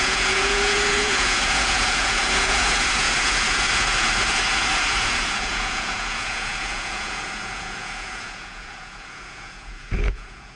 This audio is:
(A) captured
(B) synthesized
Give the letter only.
B